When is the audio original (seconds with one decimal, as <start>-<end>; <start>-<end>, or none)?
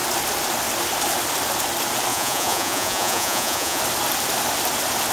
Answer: 0.0-2.1; 3.8-5.1